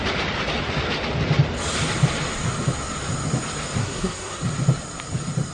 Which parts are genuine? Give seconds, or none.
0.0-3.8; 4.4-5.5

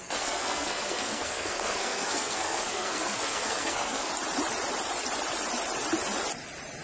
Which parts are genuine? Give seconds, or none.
4.1-6.8

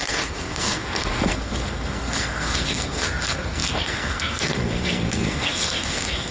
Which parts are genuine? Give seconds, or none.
none

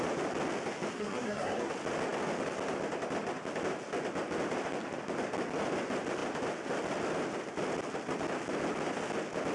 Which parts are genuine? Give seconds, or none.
0.0-0.9; 1.7-9.5

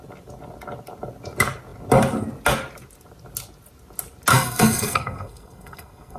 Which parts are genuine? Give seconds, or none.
0.0-4.3

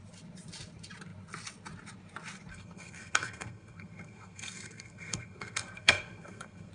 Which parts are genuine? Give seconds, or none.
0.0-2.5